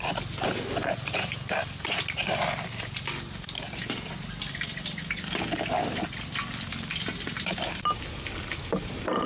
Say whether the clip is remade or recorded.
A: recorded